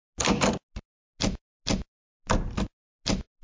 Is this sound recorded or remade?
recorded